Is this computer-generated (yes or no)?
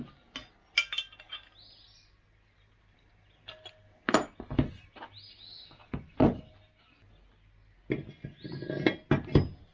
no